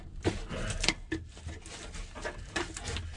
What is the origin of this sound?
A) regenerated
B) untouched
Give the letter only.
B